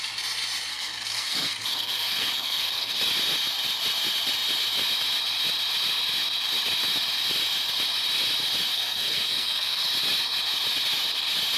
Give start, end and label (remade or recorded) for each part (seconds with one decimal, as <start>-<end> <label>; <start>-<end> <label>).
0.0-0.7 recorded; 0.7-3.0 remade; 3.0-8.7 recorded; 8.7-9.8 remade; 9.8-11.6 recorded